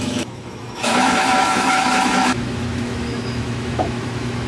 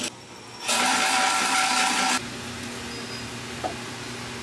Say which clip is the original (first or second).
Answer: second